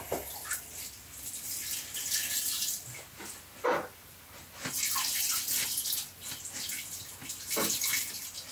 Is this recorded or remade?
recorded